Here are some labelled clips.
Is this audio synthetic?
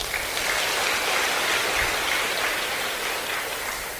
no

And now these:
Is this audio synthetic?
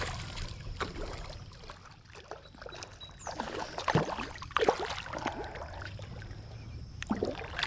no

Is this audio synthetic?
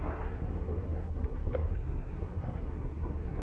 yes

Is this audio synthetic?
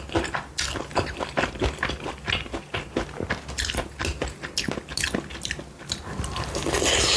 no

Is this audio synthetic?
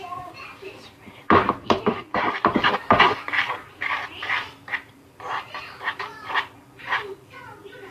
yes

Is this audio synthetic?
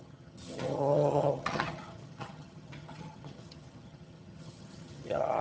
yes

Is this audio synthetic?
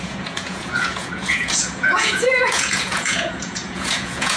yes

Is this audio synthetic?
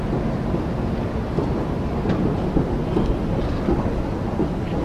no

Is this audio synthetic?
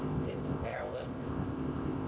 yes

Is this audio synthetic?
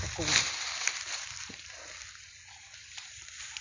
no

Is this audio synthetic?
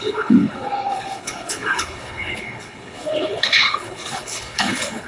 yes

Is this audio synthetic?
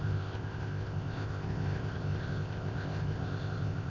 yes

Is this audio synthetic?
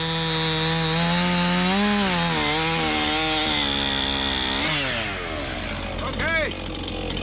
no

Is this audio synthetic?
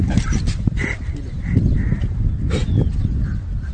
no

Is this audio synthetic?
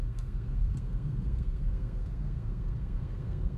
yes